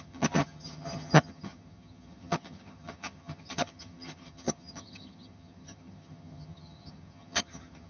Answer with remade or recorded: remade